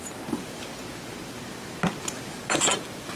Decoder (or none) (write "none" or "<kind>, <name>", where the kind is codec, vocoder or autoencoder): none